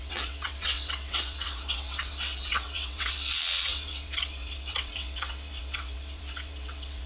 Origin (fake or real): fake